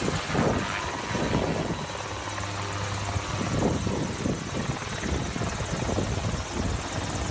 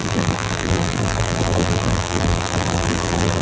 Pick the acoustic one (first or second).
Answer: first